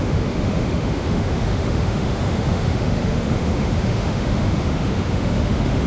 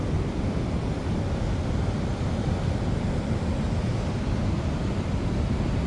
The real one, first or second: second